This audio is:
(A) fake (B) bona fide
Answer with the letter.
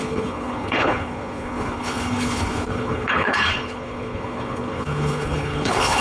A